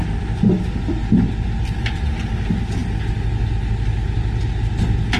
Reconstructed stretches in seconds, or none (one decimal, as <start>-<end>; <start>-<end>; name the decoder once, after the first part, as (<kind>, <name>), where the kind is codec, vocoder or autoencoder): none